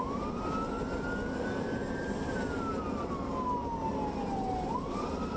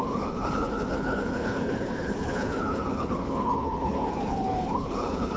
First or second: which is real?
first